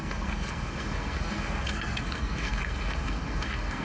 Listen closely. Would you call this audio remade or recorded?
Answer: remade